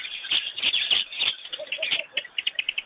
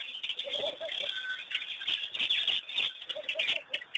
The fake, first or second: first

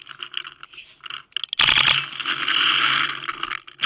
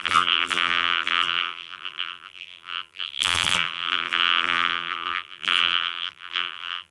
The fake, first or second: second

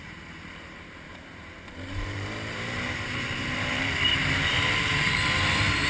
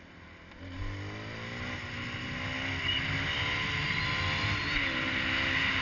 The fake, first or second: first